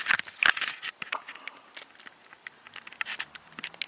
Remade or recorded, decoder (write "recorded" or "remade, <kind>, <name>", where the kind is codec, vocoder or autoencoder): recorded